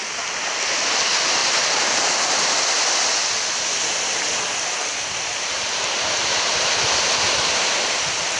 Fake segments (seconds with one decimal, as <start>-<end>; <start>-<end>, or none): none